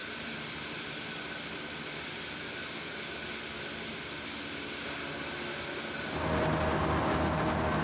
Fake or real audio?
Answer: real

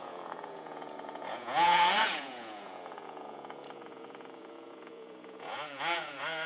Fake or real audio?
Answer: fake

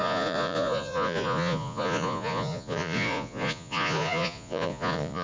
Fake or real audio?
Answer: fake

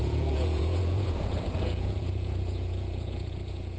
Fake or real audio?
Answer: fake